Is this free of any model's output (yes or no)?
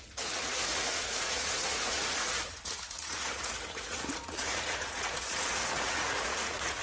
no